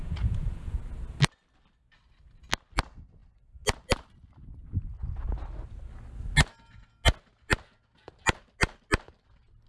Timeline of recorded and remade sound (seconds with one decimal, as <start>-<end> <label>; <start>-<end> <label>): 0.0-0.8 remade; 0.8-9.7 recorded